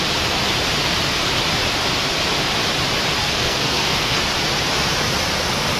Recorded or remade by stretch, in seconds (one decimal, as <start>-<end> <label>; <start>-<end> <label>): 0.0-3.2 recorded; 3.2-4.2 remade; 4.2-5.8 recorded